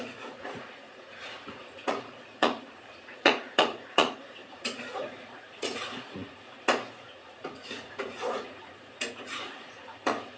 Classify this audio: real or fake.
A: fake